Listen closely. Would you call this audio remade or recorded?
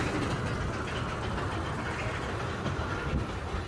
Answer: recorded